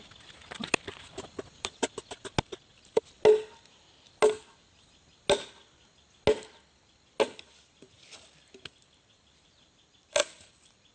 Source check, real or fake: real